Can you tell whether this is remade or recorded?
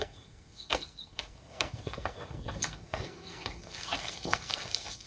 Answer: remade